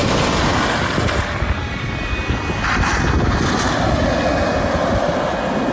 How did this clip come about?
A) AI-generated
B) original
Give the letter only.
B